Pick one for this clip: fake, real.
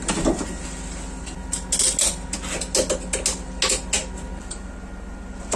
real